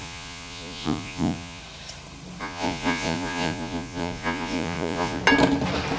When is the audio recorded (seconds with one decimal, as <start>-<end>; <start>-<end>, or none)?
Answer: 1.6-2.4; 5.2-6.0